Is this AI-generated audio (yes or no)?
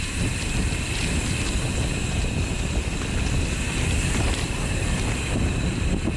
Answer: yes